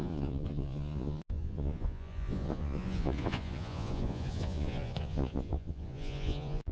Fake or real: fake